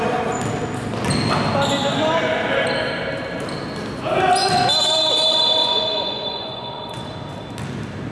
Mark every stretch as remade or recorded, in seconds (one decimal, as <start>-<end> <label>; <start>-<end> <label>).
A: 0.0-5.6 recorded; 5.6-7.0 remade; 7.0-8.1 recorded